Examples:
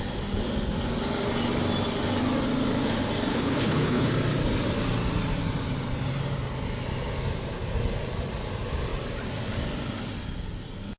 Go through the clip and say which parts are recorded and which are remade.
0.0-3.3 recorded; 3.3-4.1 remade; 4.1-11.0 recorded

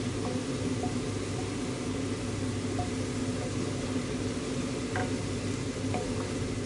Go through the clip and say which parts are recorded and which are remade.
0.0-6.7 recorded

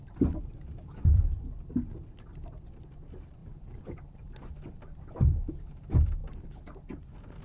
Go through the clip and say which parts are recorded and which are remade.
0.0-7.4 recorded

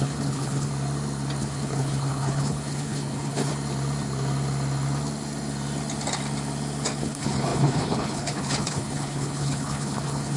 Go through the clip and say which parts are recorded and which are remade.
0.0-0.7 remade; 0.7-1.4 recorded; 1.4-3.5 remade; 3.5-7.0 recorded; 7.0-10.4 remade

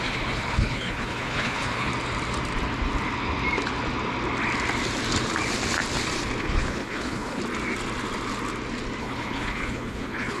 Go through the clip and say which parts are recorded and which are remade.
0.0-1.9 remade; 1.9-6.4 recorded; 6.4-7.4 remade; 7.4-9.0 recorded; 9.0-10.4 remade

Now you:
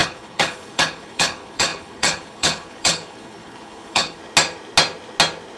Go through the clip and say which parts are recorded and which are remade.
0.0-4.2 remade; 4.2-5.6 recorded

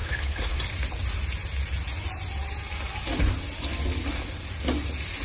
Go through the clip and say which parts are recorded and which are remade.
0.0-0.6 remade; 0.6-5.2 recorded